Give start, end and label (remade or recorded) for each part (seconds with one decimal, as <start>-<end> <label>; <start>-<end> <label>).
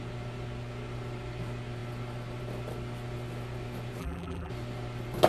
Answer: 0.0-4.0 recorded; 4.0-4.5 remade; 4.5-5.3 recorded